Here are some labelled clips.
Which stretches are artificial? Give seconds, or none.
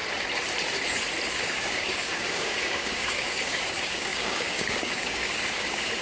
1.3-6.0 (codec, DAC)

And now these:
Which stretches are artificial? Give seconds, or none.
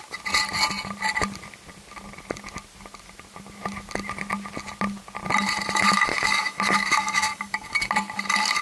6.1-7.9 (codec, DAC)